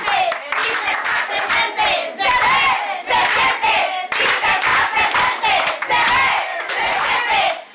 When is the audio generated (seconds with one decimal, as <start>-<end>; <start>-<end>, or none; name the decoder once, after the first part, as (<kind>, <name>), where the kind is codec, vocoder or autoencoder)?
0.6-1.5 (vocoder, Vocos); 6.5-7.1